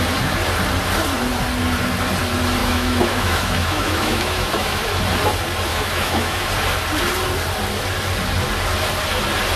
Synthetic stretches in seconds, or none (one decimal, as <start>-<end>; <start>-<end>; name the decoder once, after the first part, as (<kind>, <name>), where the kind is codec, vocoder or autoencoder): 2.6-4.9 (autoencoder, DAC-VAE); 5.7-6.5